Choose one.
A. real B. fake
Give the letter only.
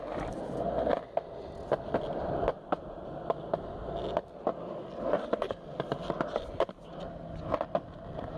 A